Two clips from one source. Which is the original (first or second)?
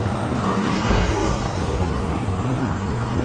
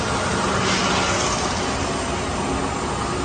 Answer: second